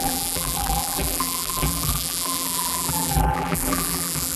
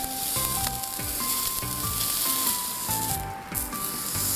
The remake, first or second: first